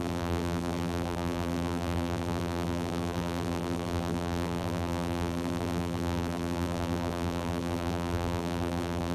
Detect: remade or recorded remade